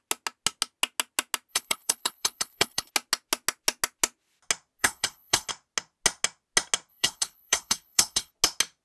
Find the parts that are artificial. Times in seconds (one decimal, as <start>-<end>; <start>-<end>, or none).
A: 1.5-2.9; 4.8-5.5; 6.9-8.3